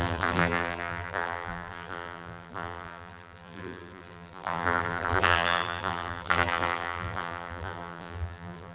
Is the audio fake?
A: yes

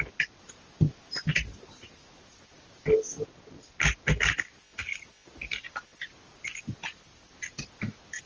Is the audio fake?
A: no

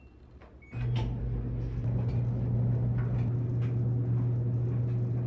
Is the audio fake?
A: no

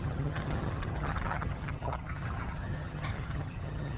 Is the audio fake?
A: yes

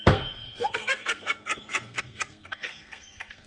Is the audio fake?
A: yes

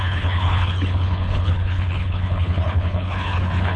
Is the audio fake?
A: yes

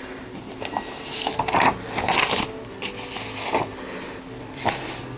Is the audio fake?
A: no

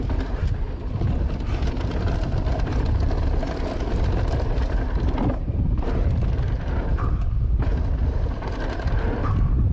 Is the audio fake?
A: no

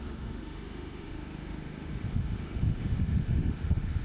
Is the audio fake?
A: yes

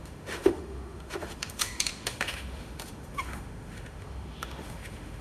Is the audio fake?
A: yes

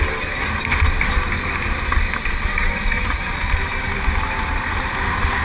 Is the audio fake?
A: no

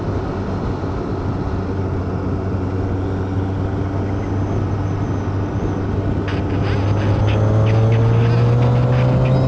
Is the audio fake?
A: no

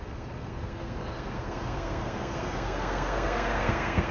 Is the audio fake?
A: yes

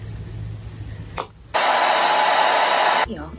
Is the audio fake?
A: no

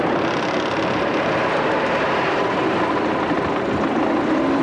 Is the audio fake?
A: no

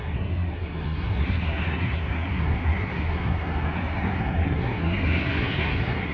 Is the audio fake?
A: yes